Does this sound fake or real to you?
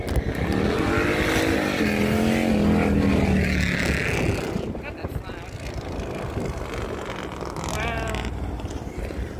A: real